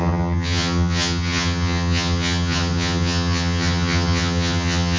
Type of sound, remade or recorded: remade